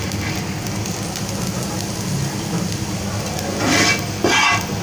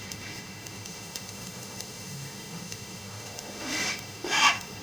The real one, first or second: first